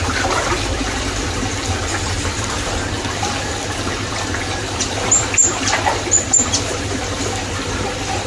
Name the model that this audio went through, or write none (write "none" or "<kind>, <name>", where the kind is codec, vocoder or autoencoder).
vocoder, BigVGAN v2